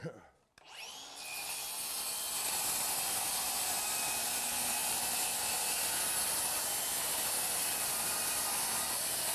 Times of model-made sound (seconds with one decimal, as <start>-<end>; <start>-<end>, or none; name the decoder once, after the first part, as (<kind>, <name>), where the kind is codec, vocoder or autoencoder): none